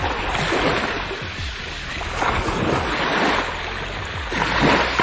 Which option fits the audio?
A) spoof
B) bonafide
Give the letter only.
B